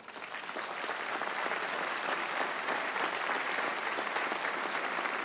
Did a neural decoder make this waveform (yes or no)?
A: no